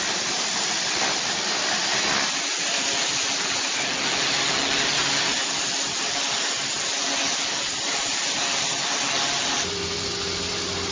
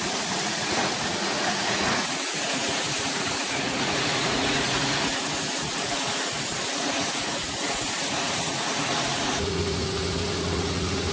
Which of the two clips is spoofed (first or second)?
second